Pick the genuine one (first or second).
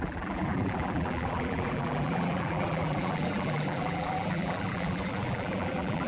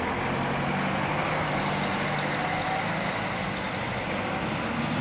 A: second